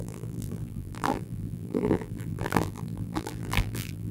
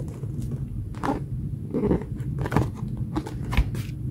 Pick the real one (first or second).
second